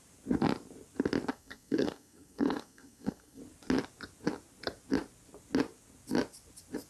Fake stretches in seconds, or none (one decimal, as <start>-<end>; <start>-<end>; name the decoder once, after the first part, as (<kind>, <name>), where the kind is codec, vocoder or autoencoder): 1.3-3.4 (codec, SNAC)